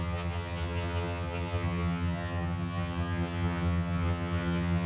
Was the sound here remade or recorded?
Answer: remade